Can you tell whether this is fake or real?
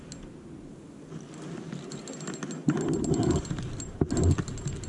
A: real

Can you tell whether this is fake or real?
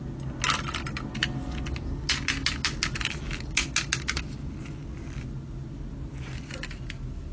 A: real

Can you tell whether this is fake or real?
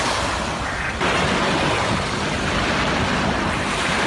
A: real